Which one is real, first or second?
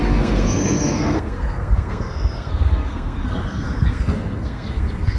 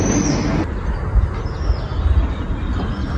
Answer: second